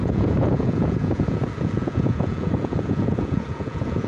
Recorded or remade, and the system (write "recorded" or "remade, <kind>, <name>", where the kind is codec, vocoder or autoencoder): remade, vocoder, Vocos